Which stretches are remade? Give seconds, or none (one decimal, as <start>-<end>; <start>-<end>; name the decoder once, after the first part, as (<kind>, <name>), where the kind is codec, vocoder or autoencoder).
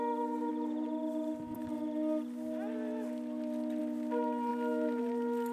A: none